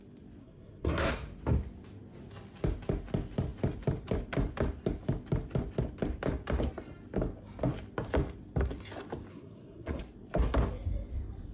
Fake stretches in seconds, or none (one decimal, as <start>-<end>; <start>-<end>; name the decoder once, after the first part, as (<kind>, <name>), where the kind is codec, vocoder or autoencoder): 0.4-1.1 (codec, SNAC); 9.3-10.0